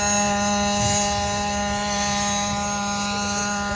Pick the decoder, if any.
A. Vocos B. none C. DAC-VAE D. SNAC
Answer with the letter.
B